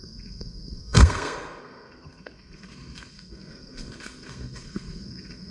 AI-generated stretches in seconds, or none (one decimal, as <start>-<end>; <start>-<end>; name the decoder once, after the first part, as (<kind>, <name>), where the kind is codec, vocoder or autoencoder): 0.0-5.5 (codec, SNAC)